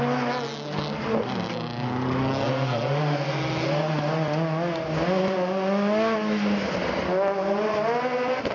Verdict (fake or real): real